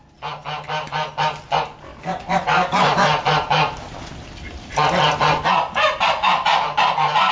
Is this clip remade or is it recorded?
recorded